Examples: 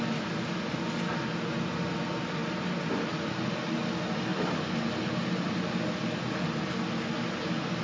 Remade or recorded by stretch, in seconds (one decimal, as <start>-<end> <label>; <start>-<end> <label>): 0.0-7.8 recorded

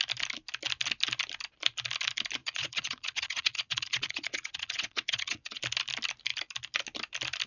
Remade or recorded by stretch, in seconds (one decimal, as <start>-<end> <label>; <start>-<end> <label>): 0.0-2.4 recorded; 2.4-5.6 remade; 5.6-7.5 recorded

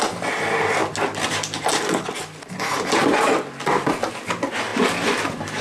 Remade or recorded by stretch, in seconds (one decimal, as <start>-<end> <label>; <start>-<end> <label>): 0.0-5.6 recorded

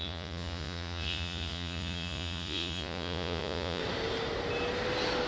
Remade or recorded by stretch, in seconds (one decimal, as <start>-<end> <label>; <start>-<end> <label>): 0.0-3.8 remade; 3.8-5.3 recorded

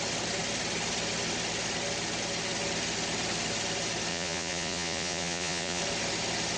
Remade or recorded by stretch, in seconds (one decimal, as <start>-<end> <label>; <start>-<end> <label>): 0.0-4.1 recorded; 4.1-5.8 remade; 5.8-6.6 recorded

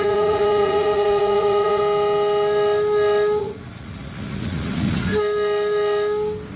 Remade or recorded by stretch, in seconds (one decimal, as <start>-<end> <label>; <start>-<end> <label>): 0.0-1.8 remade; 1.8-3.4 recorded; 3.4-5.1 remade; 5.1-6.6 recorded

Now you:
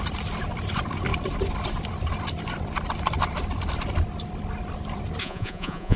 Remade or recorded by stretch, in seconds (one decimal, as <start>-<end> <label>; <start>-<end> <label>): 0.0-5.2 recorded; 5.2-6.0 remade